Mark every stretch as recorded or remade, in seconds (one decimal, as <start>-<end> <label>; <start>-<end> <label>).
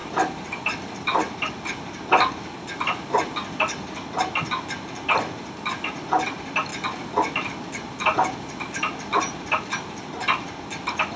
0.0-1.5 remade; 1.5-11.2 recorded